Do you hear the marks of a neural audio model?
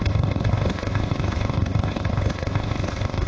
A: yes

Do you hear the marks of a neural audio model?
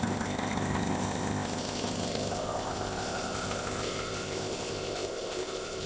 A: yes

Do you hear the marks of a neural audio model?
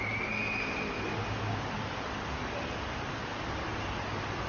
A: no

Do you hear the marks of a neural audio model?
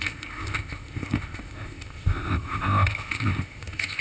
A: yes